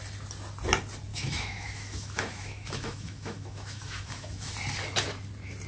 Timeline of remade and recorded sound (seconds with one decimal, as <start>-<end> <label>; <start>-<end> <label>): 0.0-1.1 recorded; 1.1-4.5 remade; 4.5-5.7 recorded